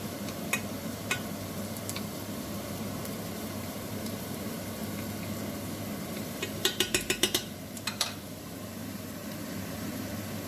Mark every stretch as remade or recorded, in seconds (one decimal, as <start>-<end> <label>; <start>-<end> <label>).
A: 0.0-4.8 remade; 4.8-6.0 recorded; 6.0-10.5 remade